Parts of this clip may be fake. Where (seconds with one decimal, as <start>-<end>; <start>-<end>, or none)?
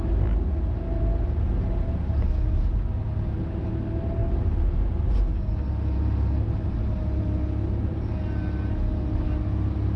none